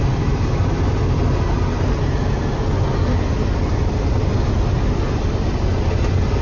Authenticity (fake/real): real